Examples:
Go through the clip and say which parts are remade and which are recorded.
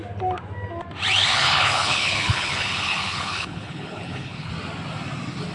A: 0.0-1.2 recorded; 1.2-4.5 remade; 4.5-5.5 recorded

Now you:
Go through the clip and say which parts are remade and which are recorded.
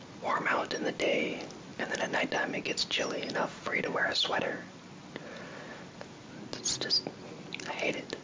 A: 0.0-8.2 recorded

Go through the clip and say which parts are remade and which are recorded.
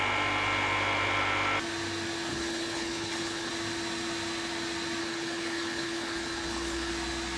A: 0.0-2.3 recorded; 2.3-3.5 remade; 3.5-5.0 recorded; 5.0-6.9 remade; 6.9-7.4 recorded